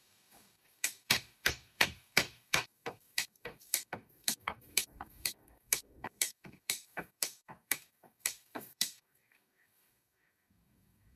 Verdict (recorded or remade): remade